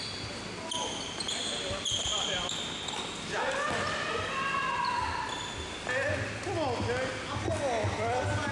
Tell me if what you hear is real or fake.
real